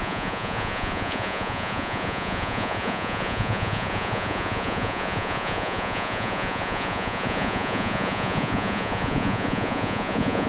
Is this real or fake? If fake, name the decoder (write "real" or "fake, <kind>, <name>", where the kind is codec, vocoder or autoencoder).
fake, vocoder, Vocos